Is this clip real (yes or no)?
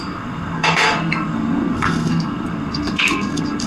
no